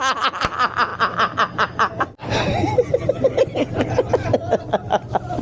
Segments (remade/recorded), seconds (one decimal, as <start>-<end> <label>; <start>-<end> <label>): 0.0-5.4 recorded